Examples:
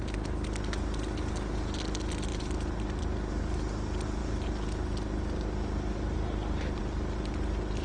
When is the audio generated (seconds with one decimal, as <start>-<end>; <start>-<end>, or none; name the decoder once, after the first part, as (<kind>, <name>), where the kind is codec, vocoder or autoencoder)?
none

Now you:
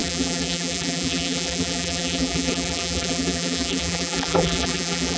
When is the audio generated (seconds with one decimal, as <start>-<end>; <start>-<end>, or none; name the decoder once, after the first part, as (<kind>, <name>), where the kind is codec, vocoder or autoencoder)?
0.0-5.2 (vocoder, BigVGAN v2)

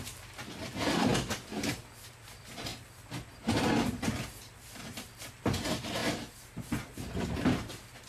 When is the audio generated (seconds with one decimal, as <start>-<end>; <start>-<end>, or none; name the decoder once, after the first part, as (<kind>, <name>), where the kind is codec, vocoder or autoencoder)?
0.0-2.7 (vocoder, BigVGAN v2); 4.3-6.0; 6.6-8.1

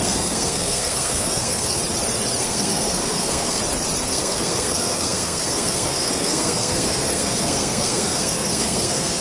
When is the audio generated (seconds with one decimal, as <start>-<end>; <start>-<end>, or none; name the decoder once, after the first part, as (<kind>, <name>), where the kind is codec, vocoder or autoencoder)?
0.0-1.8 (codec, SNAC); 2.4-3.6; 4.1-9.2

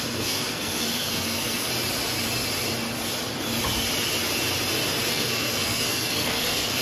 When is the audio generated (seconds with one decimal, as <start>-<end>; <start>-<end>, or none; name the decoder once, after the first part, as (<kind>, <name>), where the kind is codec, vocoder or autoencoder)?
0.0-1.7 (codec, SNAC); 5.1-6.8